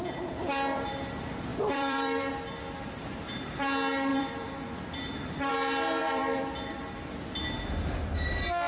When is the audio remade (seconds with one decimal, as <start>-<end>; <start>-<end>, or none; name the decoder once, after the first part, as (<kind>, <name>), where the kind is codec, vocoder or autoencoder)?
1.5-2.3 (vocoder, BigVGAN v2); 4.1-5.5; 6.0-7.1